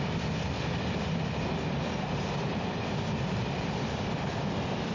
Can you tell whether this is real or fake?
real